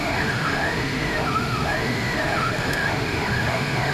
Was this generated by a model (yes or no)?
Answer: yes